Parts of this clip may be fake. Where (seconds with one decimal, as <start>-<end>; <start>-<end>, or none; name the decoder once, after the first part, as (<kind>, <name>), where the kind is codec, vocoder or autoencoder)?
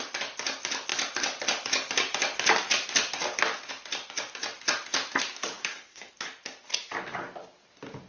5.6-6.1 (codec, SNAC)